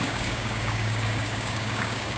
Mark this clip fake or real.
fake